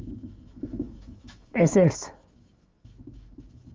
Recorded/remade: remade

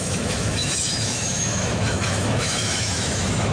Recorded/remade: remade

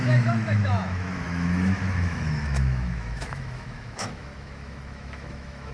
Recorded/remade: remade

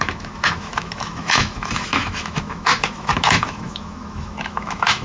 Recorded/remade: remade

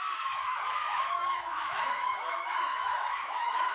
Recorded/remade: remade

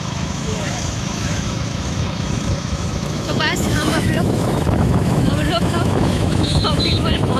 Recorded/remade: remade